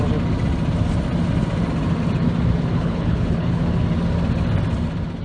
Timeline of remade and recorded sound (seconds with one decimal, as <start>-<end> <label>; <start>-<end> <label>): 0.0-2.7 recorded; 2.7-3.6 remade; 3.6-5.2 recorded